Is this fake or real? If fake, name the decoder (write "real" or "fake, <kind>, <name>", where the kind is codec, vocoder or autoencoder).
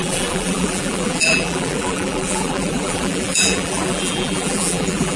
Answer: fake, vocoder, BigVGAN v2